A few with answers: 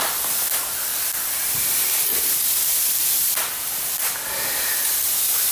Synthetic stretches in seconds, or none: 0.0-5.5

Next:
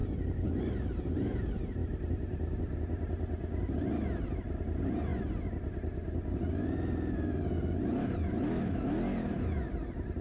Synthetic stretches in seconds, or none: 0.6-1.8; 4.2-5.1; 9.7-10.2

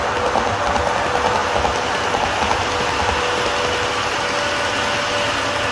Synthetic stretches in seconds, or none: none

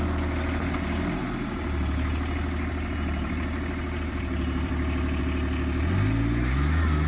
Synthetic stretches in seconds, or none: 1.2-5.2

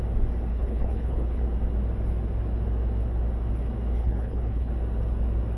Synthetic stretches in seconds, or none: 0.5-1.4; 4.0-4.7

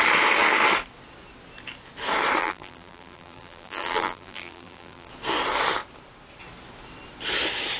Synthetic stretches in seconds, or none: 2.4-5.1